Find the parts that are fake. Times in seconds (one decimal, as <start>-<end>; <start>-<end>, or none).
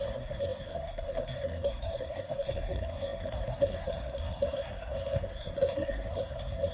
0.0-6.7